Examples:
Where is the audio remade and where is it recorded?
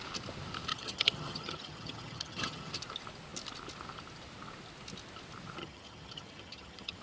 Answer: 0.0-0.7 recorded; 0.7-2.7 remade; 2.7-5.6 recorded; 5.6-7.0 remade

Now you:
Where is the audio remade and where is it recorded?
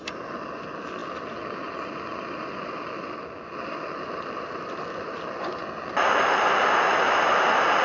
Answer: 0.0-7.8 recorded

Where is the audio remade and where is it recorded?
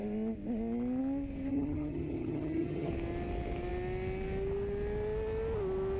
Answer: 0.0-1.5 recorded; 1.5-2.9 remade; 2.9-6.0 recorded